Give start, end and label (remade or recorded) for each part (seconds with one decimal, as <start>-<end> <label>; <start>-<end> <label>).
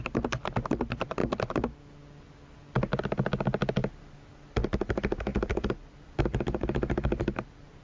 0.0-7.8 recorded